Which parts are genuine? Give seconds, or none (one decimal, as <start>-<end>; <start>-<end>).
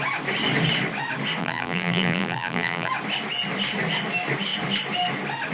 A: 0.0-1.4; 2.9-5.5